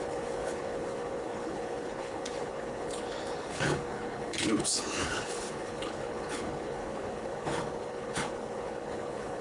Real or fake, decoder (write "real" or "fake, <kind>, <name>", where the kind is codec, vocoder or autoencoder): fake, codec, HILCodec